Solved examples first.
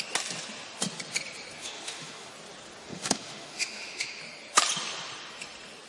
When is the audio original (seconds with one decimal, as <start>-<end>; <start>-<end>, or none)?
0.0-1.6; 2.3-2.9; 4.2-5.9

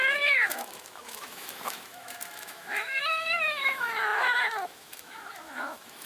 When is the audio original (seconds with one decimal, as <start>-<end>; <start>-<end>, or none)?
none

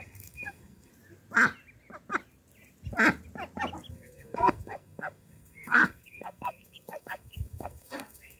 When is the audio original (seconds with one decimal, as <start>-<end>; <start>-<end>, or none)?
0.9-3.9

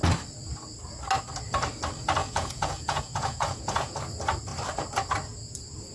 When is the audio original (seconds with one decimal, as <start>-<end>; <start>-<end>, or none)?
0.0-2.2; 4.0-5.9

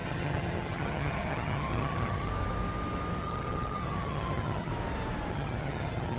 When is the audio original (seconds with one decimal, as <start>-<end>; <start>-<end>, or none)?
2.3-3.2; 4.7-5.3

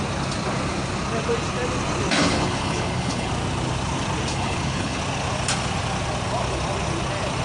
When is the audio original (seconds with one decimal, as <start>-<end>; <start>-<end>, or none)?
0.0-2.2; 3.3-4.3; 5.0-7.4